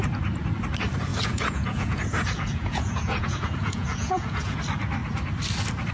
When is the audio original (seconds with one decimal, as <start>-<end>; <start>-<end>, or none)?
0.0-1.1; 4.6-5.9